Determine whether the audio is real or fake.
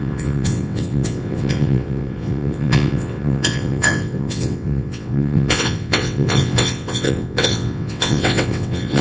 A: fake